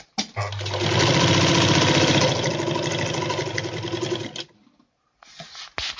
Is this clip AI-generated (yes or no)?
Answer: no